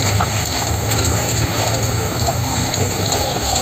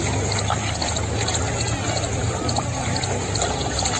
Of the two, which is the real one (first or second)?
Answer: second